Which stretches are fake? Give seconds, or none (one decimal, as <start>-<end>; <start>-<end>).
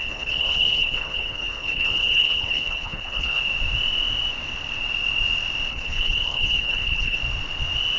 0.0-3.4; 5.7-7.2